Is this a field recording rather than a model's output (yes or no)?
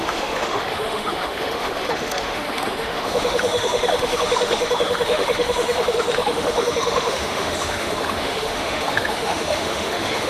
no